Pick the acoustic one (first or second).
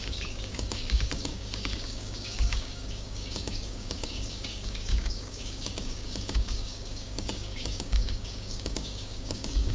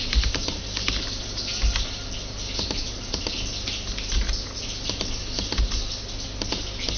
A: second